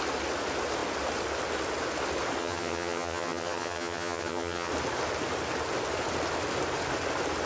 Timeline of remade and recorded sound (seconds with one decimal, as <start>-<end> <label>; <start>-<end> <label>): 0.0-2.4 recorded; 2.4-4.7 remade; 4.7-7.5 recorded